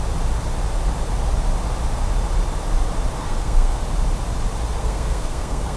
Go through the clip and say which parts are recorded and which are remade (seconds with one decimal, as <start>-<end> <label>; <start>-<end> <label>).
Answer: 0.0-3.2 recorded; 3.2-3.8 remade; 3.8-4.8 recorded; 4.8-5.8 remade